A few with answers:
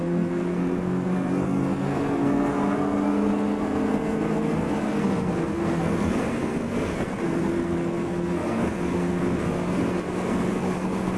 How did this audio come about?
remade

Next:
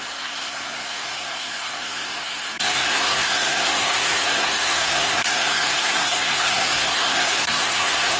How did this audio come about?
remade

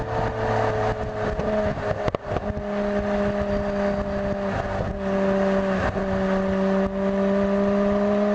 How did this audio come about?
recorded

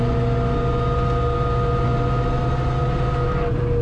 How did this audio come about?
recorded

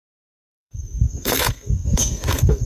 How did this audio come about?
remade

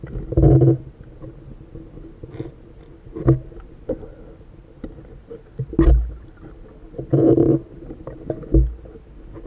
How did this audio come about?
recorded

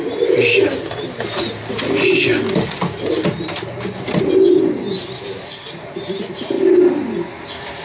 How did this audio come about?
recorded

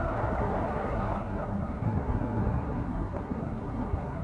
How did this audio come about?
remade